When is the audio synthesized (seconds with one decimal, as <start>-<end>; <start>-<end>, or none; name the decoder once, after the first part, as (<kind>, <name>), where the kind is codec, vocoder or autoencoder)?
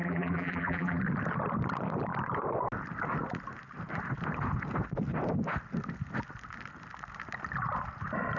0.0-1.0 (vocoder, BigVGAN v2)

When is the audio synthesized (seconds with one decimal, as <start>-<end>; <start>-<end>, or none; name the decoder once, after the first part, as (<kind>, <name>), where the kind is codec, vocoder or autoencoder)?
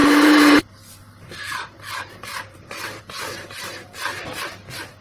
0.0-3.0 (vocoder, BigVGAN v2)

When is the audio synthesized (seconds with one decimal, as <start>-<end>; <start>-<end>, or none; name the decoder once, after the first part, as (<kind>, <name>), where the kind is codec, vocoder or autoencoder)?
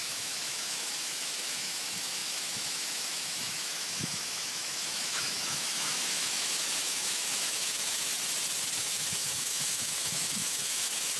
0.0-8.1 (autoencoder, DAC-VAE); 8.8-11.2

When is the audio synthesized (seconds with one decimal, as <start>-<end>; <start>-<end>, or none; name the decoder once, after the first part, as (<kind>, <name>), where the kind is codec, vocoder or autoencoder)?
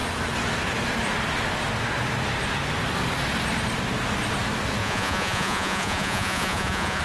4.8-7.0 (vocoder, Vocos)